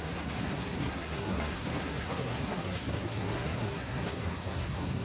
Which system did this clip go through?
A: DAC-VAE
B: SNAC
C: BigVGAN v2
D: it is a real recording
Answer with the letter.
B